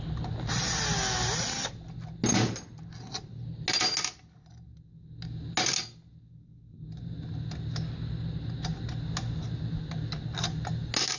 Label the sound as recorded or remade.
recorded